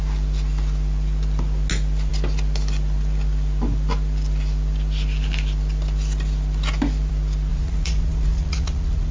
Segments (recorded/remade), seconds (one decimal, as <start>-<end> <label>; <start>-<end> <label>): 0.0-7.5 recorded; 7.5-9.1 remade